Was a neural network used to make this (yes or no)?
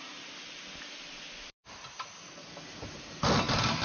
no